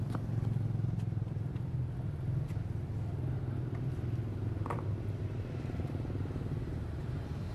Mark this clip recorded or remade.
recorded